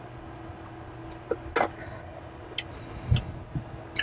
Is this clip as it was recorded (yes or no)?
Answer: yes